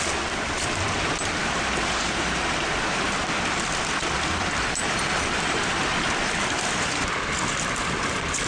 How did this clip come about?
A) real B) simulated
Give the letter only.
A